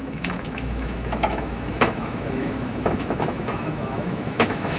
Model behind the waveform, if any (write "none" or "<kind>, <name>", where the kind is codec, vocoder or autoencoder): autoencoder, DAC-VAE